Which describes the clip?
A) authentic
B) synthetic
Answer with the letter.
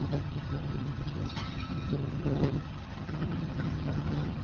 B